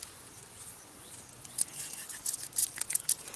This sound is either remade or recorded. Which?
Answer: remade